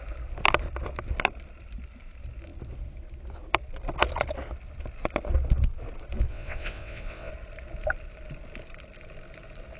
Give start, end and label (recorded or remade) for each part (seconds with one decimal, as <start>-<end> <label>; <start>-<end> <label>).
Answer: 0.0-6.3 recorded; 6.3-7.3 remade; 7.3-9.8 recorded